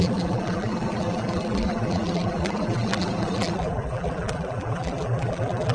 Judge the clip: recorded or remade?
remade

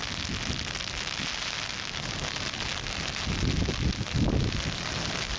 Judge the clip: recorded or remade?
recorded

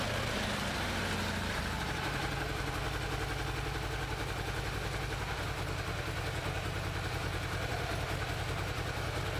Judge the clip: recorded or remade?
recorded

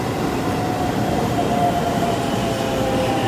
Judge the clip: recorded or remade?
recorded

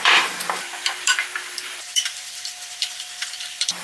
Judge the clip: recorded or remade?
remade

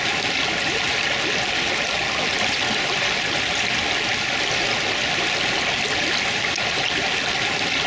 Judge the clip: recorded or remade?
recorded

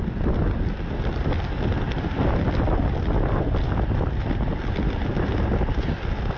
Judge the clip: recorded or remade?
recorded